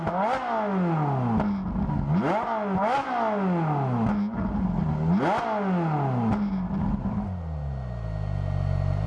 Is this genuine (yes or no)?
yes